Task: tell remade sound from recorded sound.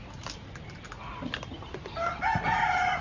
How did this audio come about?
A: recorded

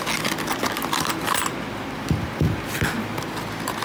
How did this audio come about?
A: recorded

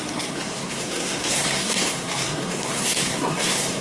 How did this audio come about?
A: remade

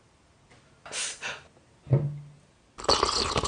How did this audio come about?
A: recorded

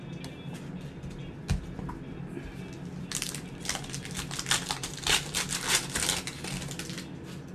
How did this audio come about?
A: recorded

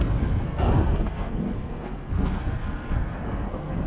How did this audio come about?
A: remade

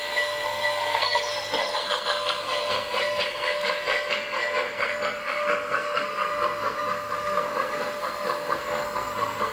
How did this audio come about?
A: remade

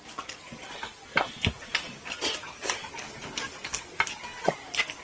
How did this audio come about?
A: recorded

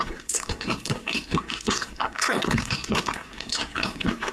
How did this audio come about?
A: remade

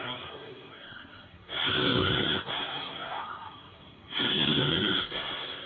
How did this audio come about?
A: remade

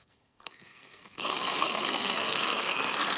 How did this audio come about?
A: remade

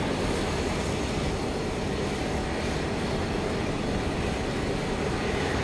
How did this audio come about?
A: recorded